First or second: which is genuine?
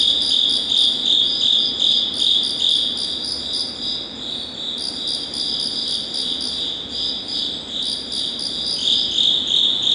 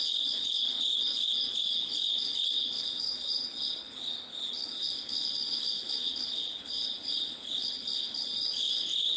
first